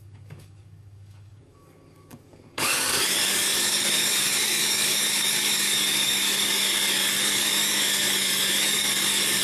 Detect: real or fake fake